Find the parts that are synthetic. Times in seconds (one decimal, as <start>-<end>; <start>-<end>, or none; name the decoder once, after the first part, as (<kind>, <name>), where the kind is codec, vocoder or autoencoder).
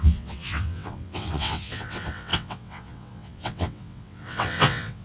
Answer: 0.0-5.0 (vocoder, WaveNeXt)